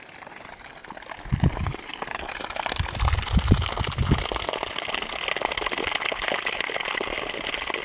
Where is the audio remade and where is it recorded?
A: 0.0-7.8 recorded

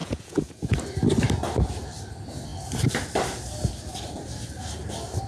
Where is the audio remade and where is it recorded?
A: 0.0-0.7 remade; 0.7-5.3 recorded